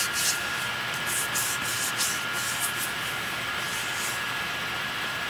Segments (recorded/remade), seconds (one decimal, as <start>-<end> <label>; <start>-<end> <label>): 0.0-5.3 recorded